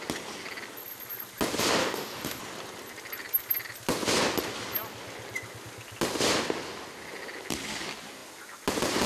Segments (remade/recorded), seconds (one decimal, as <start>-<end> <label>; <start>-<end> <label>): 0.0-1.8 recorded; 1.8-2.4 remade; 2.4-9.1 recorded

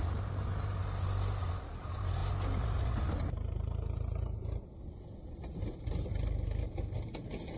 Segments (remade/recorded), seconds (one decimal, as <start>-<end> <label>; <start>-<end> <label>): 0.0-7.6 recorded

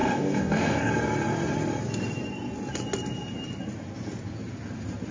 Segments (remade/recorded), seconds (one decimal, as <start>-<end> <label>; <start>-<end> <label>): 0.0-0.9 remade; 0.9-5.1 recorded

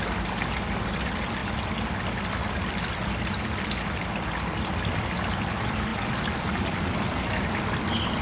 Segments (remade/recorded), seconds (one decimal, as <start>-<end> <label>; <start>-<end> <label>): 0.0-8.2 recorded

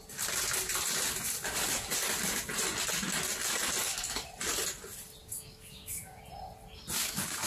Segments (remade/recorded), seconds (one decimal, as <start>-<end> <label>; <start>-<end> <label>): 0.0-5.2 recorded; 5.2-6.2 remade; 6.2-7.0 recorded; 7.0-7.5 remade

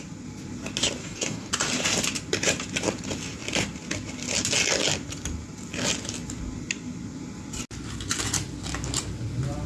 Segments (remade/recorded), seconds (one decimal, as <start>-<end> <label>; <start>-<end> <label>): 0.0-1.0 recorded; 1.0-1.5 remade; 1.5-9.7 recorded